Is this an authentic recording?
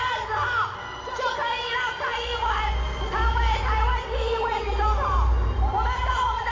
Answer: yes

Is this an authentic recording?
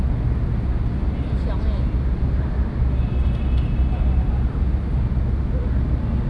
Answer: yes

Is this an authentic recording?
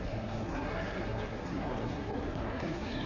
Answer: no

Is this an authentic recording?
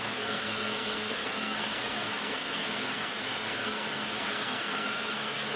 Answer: no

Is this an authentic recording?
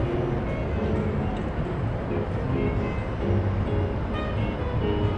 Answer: yes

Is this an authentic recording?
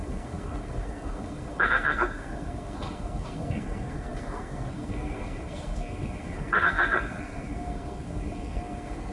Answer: no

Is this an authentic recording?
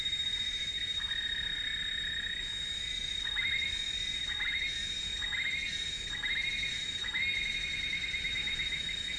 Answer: yes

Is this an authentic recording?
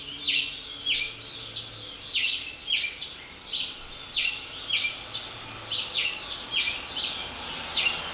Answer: yes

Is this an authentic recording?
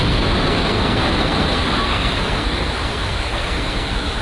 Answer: no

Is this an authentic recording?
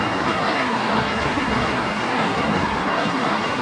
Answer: no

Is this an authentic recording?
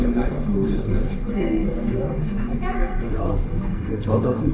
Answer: no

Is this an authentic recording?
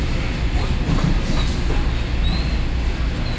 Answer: yes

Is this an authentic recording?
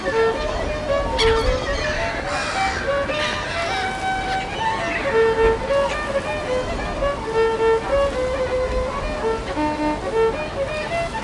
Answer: yes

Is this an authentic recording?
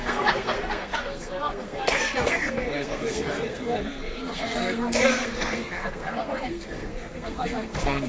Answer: no